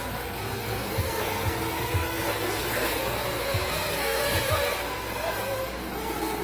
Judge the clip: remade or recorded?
remade